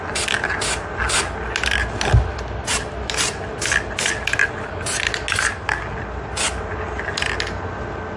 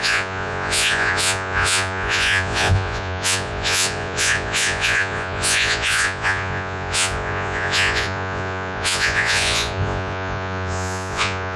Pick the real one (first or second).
first